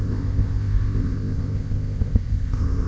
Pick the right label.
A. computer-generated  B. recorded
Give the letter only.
A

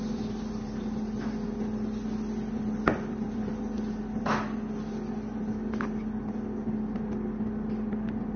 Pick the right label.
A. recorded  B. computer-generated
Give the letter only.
A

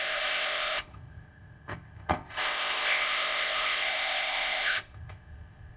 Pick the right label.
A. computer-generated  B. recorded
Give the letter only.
A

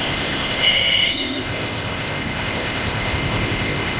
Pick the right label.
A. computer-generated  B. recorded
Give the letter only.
A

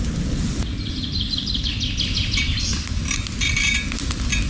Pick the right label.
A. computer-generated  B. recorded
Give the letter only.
B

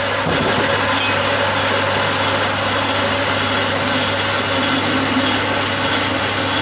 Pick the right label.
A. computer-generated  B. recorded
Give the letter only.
B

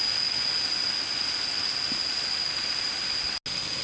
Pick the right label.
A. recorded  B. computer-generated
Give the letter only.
A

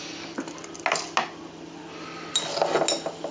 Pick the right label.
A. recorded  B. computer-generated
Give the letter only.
A